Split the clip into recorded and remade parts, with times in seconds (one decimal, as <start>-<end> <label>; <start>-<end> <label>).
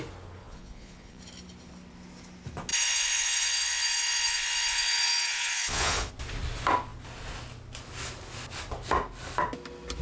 0.0-0.4 recorded; 0.4-1.2 remade; 1.2-2.7 recorded; 2.7-6.1 remade; 6.1-10.0 recorded